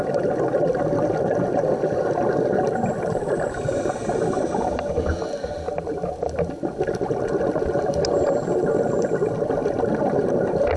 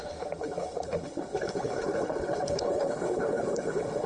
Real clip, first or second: first